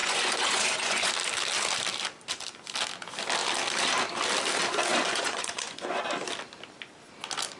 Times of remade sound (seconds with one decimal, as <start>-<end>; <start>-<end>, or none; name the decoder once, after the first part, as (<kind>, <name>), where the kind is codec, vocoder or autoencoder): 0.0-1.1 (vocoder, Vocos); 4.9-6.0